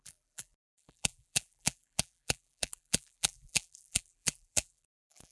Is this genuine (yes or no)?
no